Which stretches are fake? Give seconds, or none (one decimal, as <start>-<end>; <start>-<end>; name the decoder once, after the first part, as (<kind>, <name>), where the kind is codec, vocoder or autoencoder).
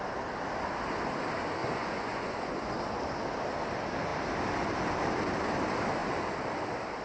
1.6-2.8 (vocoder, Vocos)